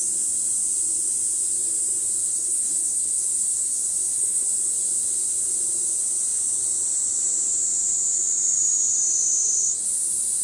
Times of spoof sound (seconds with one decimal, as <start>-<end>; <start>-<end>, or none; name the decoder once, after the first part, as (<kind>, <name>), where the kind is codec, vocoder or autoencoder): 2.2-4.5 (codec, HILCodec)